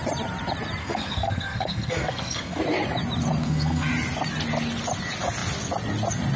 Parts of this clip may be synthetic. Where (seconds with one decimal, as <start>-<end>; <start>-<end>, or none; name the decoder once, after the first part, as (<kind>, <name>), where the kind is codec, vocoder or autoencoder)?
0.8-2.6 (codec, SNAC); 3.4-3.9